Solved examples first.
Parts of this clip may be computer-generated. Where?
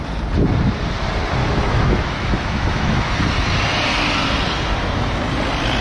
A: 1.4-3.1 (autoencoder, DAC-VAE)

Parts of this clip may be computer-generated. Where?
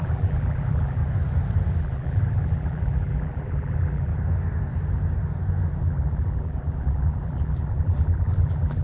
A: 0.0-1.0 (vocoder, BigVGAN v2); 1.8-4.1; 5.8-8.8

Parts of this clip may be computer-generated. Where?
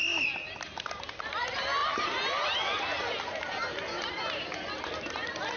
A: none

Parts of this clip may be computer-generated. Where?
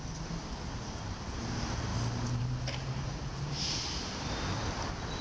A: none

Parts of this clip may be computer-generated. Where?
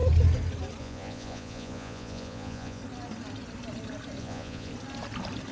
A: 0.8-2.8 (vocoder, Vocos); 4.2-4.7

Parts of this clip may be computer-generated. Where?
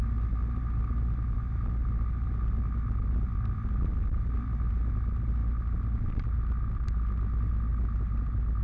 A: none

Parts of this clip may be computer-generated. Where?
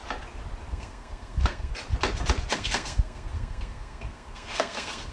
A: 0.7-1.7 (codec, SNAC); 2.5-5.1